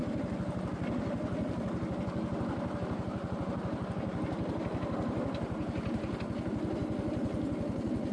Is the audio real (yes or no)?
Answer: yes